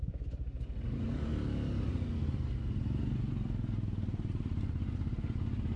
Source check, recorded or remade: recorded